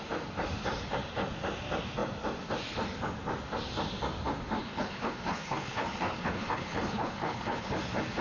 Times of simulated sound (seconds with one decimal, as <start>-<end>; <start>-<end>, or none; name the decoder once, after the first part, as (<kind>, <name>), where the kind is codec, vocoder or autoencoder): 4.6-7.7 (codec, HILCodec)